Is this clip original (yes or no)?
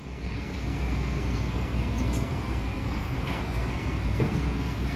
no